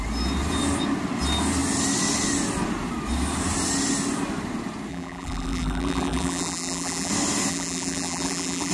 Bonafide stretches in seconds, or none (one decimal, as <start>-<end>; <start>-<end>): 0.0-4.9; 7.1-7.5